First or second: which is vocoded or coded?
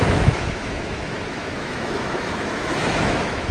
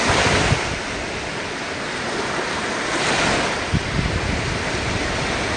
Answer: first